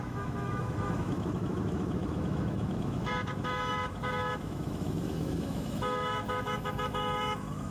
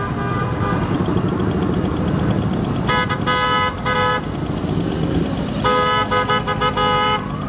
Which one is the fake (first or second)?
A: first